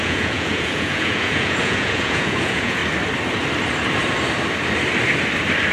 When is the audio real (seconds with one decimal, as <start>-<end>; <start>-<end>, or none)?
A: 2.8-5.7